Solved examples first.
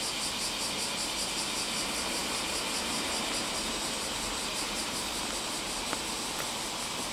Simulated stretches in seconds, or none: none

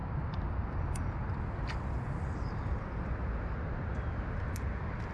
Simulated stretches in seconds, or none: none

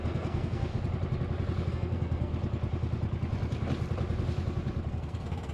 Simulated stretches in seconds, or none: 0.0-0.7 (codec, SNAC); 1.7-2.3; 4.9-5.5